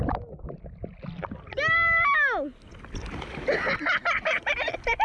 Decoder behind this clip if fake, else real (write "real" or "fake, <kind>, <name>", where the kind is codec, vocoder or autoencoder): real